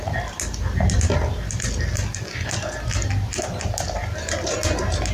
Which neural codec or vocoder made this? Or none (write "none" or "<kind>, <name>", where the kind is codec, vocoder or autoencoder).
none